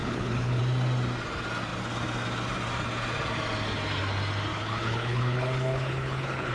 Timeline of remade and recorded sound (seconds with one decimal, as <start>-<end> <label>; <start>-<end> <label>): 0.0-0.6 remade; 0.6-4.5 recorded; 4.5-6.5 remade